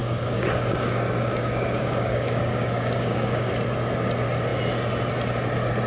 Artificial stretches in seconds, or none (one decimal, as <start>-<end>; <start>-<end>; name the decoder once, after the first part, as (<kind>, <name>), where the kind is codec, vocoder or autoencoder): 0.0-3.5 (codec, DAC)